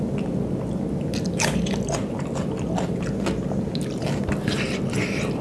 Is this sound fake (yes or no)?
no